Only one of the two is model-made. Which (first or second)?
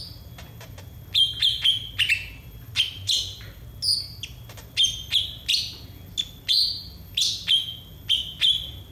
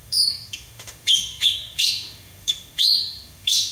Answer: second